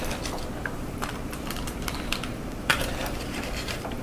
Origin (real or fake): fake